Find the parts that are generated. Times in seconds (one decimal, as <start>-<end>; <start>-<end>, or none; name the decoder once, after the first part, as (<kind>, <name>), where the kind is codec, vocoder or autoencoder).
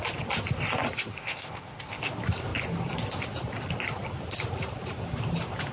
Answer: 1.2-2.0 (codec, ZipCodec)